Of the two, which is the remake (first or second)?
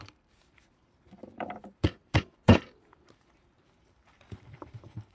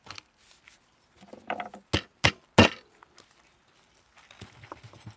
first